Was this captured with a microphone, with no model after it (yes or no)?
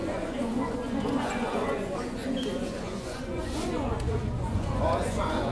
no